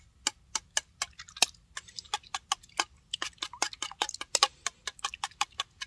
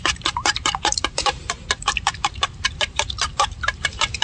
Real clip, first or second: first